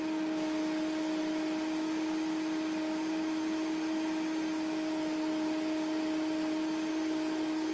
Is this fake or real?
real